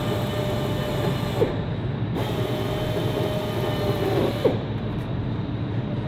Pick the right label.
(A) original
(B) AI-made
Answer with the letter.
A